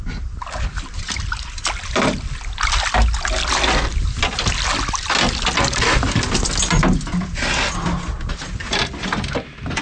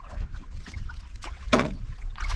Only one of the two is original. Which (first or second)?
first